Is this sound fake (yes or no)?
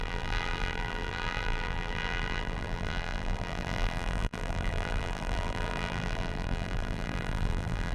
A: yes